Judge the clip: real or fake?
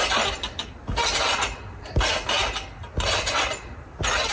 real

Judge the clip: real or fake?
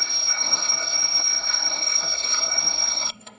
fake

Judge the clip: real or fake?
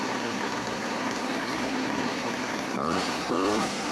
fake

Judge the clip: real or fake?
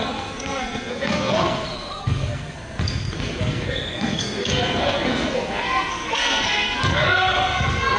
fake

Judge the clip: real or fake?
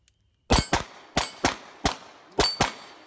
real